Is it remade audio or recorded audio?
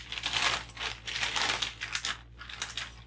recorded